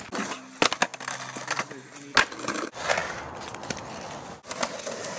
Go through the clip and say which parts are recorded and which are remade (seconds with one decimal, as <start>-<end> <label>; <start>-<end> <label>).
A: 0.0-5.2 recorded